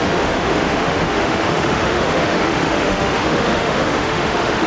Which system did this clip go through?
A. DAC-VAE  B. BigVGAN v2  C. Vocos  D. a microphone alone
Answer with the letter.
A